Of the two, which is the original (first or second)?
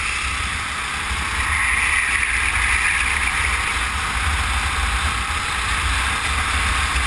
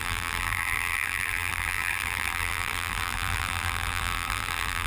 first